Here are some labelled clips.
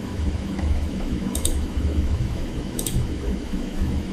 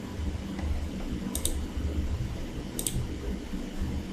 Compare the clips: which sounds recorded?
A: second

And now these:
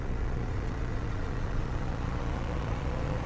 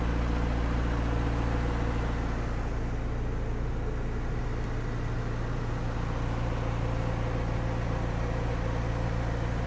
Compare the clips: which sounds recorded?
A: second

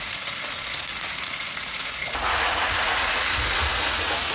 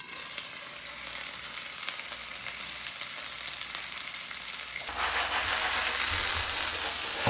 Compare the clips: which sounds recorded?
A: second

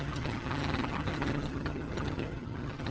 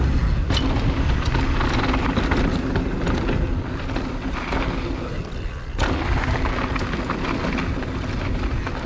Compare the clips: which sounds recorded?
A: second